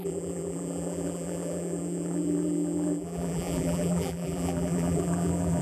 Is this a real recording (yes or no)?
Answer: no